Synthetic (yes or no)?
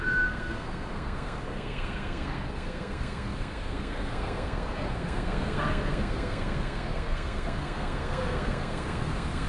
yes